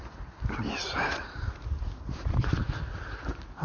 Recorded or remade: recorded